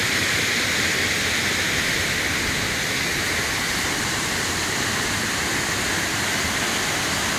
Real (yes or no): yes